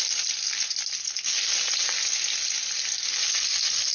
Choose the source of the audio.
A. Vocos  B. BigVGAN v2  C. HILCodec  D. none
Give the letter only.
D